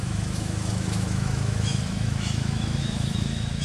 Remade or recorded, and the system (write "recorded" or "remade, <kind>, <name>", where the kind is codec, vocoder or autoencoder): remade, autoencoder, DAC-VAE